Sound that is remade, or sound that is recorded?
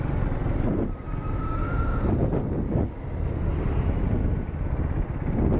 recorded